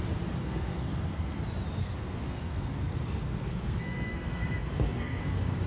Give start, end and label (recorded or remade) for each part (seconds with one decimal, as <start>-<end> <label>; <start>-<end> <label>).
0.0-0.4 recorded; 0.4-1.4 remade; 1.4-1.8 recorded; 1.8-5.2 remade; 5.2-5.7 recorded